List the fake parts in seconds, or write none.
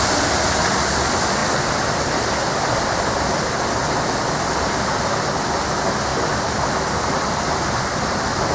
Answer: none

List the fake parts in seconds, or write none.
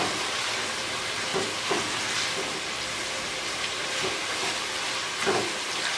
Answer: 0.0-1.3 (vocoder, BigVGAN v2); 3.0-4.4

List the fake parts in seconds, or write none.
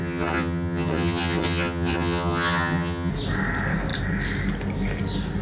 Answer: 0.0-3.1 (vocoder, HiFi-GAN)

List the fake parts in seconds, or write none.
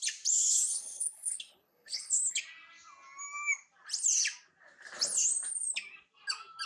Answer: 0.5-2.4 (codec, HILCodec)